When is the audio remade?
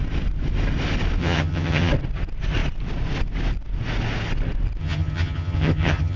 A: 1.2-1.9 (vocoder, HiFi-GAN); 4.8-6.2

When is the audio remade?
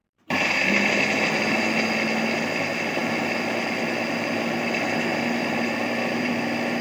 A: 0.0-0.7 (vocoder, BigVGAN v2); 5.1-6.3